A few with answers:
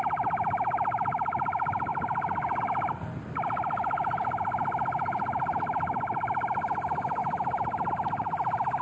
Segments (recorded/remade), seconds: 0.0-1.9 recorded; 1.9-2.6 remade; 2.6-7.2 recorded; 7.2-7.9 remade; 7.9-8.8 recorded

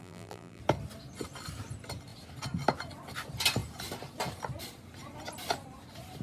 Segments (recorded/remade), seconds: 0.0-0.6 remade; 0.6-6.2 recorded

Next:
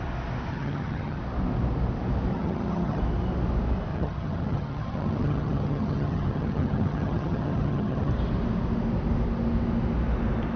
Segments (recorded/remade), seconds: 0.0-0.5 recorded; 0.5-1.2 remade; 1.2-2.3 recorded; 2.3-3.0 remade; 3.0-3.9 recorded; 3.9-8.1 remade; 8.1-10.6 recorded

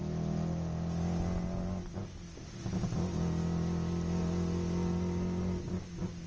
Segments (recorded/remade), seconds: 0.0-6.3 recorded

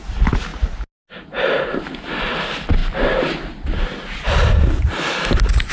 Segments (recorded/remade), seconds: 0.0-5.7 recorded

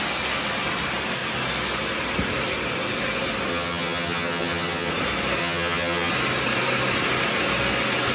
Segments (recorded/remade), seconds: 0.0-3.5 recorded; 3.5-4.9 remade; 4.9-5.4 recorded; 5.4-6.1 remade; 6.1-8.1 recorded